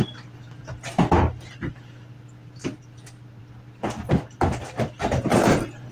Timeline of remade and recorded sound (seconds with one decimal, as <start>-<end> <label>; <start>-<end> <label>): 0.0-5.3 recorded; 5.3-5.9 remade

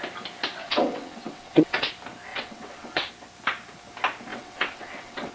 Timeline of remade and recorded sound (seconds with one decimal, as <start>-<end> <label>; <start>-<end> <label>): 0.0-0.6 recorded; 0.6-1.9 remade; 1.9-2.3 recorded; 2.3-3.1 remade; 3.1-4.3 recorded; 4.3-5.3 remade